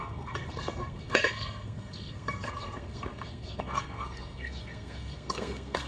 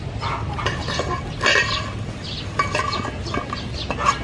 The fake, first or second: first